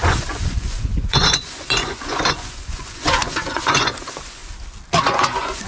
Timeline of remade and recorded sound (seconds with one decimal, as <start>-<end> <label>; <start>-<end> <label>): 0.0-4.4 remade; 4.4-5.0 recorded; 5.0-5.7 remade